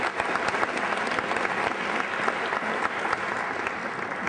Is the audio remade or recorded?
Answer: recorded